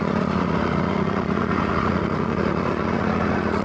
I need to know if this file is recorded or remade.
remade